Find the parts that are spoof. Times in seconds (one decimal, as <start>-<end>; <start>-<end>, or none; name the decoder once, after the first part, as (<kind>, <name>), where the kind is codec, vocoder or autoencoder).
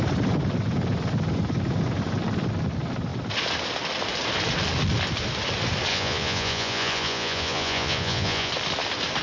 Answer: 5.9-8.5 (vocoder, Vocos)